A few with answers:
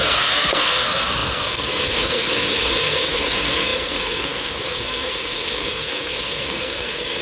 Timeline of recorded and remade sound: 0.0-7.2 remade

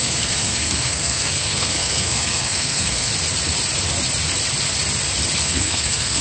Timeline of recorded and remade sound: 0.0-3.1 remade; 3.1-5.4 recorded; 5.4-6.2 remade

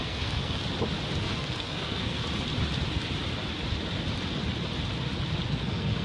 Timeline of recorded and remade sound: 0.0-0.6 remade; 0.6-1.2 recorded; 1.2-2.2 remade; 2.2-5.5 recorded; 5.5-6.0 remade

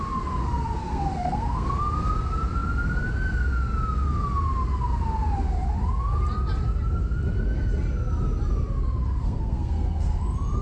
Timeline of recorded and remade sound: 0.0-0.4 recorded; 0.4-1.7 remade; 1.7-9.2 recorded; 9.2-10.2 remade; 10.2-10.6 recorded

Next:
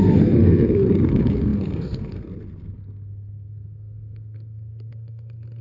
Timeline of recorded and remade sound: 0.0-5.6 remade